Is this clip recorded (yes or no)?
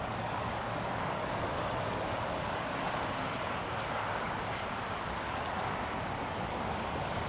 no